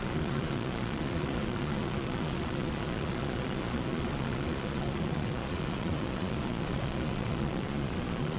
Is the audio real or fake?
fake